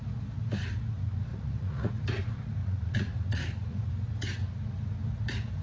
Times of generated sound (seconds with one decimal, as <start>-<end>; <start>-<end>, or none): 1.3-1.9; 2.6-3.9